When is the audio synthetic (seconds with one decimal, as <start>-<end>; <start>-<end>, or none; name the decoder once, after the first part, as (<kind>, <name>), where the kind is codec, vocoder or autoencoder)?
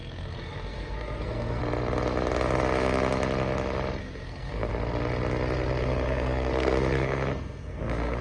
0.0-1.6 (codec, SNAC); 4.0-4.7; 5.8-8.2